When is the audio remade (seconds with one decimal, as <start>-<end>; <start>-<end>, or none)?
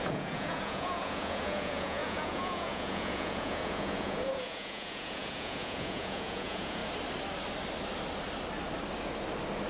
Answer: 0.0-6.8